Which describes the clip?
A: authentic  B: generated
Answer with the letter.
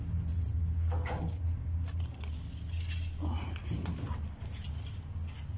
A